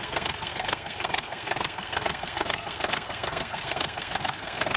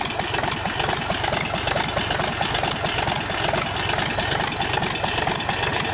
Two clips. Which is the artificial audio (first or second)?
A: first